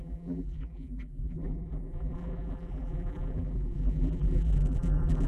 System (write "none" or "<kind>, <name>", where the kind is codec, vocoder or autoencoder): vocoder, BigVGAN v2